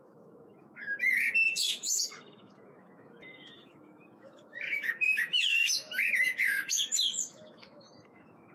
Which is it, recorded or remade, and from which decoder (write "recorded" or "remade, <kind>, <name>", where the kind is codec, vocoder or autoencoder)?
remade, autoencoder, DAC-VAE